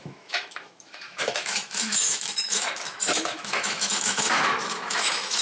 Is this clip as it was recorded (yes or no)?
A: no